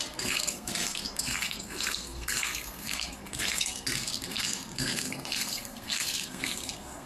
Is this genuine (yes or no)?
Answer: no